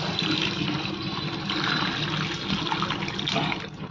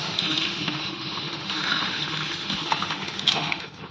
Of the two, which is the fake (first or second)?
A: second